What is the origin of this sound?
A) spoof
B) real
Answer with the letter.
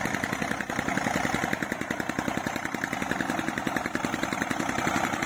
B